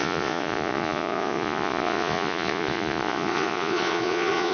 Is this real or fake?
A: fake